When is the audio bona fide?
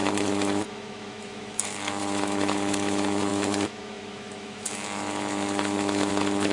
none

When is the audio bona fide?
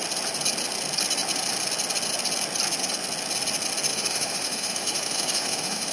0.0-3.9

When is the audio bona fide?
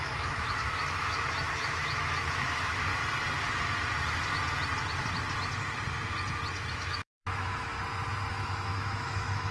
2.9-6.7; 7.7-8.3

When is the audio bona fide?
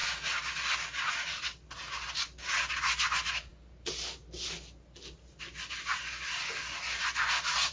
0.0-7.7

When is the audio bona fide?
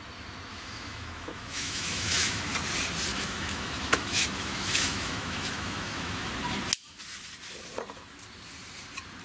0.0-0.5; 2.5-3.1; 6.3-9.2